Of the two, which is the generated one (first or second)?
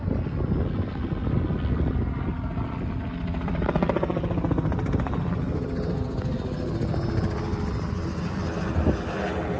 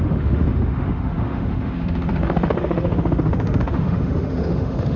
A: second